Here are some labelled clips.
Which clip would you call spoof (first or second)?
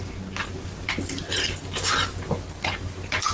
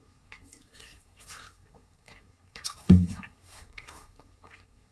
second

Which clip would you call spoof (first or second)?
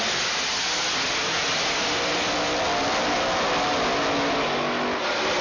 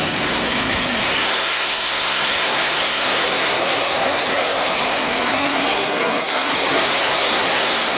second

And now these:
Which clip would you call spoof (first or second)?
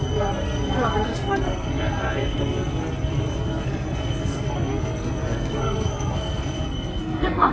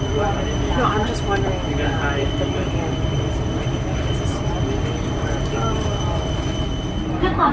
first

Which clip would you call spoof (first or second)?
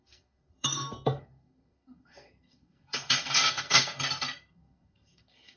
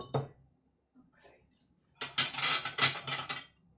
first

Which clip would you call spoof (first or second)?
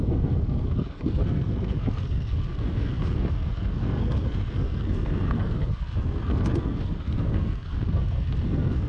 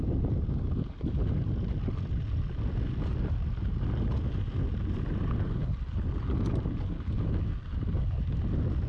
first